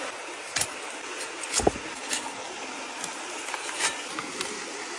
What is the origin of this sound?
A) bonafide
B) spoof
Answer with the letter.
A